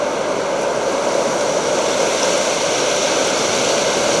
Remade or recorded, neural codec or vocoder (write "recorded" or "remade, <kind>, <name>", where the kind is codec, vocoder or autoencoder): recorded